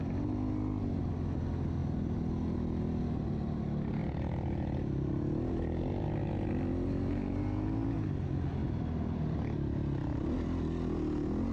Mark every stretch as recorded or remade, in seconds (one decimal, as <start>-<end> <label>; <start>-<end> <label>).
0.0-11.5 recorded